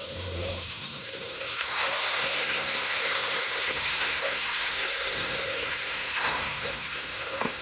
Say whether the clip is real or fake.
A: fake